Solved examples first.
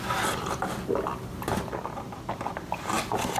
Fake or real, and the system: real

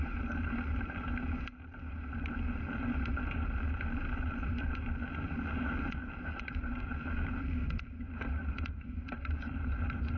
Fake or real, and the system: fake, vocoder, BigVGAN v2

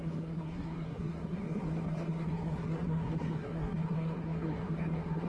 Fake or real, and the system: fake, codec, SNAC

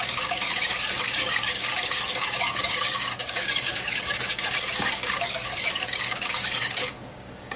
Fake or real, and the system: fake, codec, DAC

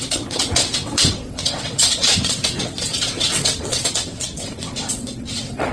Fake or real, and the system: fake, vocoder, WaveNeXt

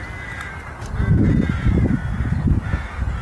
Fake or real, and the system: real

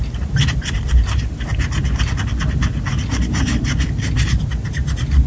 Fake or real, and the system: real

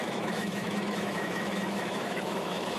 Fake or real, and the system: fake, autoencoder, DAC-VAE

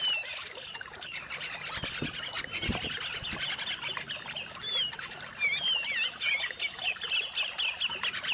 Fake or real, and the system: real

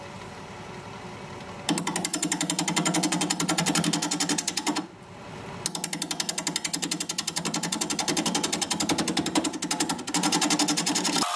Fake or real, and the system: real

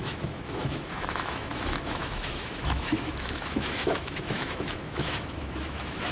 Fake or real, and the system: fake, autoencoder, DAC-VAE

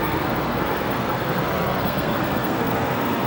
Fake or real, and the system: fake, codec, SNAC